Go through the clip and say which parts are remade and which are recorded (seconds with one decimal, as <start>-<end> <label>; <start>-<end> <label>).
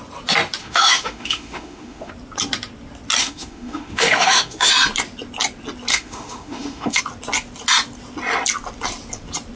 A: 0.0-0.6 recorded; 0.6-2.1 remade; 2.1-3.2 recorded; 3.2-4.7 remade; 4.7-5.9 recorded; 5.9-7.0 remade; 7.0-9.6 recorded